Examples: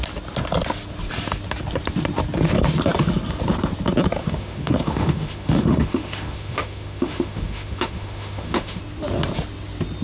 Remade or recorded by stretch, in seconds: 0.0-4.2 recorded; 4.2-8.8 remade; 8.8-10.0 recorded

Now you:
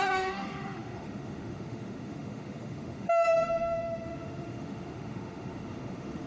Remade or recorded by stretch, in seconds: 0.0-6.3 remade

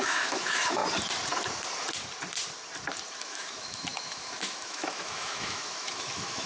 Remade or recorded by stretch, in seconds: 0.0-0.8 remade; 0.8-3.2 recorded; 3.2-6.5 remade